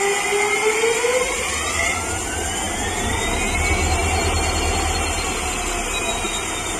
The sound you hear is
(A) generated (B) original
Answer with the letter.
B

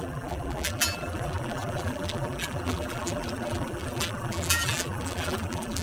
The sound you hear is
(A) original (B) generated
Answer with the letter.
B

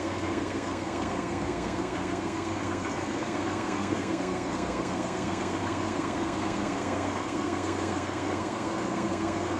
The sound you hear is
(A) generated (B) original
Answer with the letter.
A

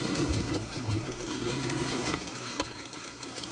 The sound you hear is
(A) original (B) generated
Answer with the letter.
B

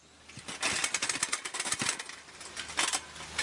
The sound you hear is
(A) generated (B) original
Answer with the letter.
B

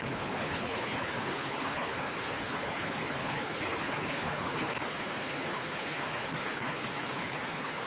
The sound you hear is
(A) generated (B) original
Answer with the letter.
A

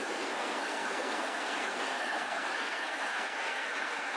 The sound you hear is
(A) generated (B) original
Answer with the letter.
A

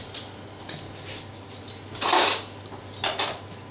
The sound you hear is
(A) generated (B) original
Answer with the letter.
B